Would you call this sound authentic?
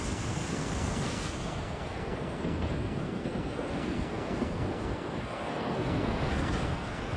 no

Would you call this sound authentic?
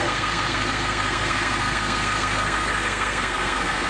no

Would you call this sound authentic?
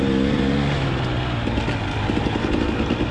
yes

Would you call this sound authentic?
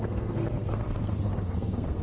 no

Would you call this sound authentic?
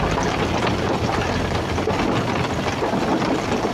yes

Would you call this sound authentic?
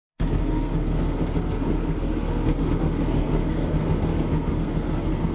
no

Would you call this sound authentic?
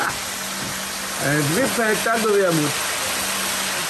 yes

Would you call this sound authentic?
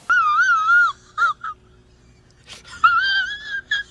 yes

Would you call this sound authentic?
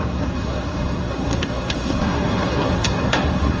no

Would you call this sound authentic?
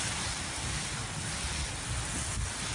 yes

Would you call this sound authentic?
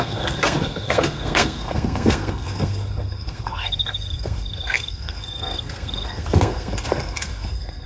no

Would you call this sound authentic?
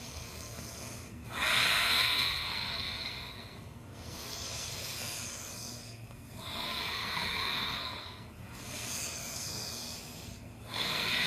no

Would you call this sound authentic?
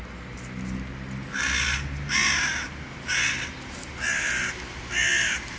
yes